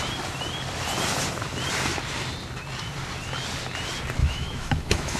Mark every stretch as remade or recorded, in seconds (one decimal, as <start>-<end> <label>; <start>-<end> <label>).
0.0-4.2 recorded; 4.2-5.2 remade